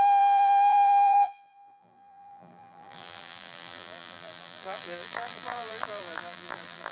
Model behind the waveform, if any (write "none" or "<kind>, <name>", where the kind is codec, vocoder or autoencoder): vocoder, BigVGAN v2